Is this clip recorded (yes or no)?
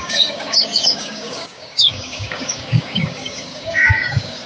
no